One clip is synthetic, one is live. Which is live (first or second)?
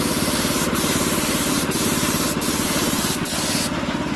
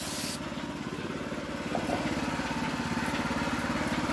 second